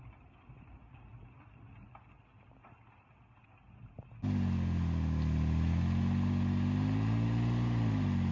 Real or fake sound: real